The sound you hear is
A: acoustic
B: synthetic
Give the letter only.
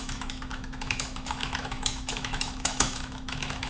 B